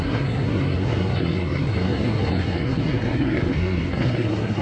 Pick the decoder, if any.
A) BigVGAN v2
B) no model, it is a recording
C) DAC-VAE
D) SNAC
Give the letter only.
D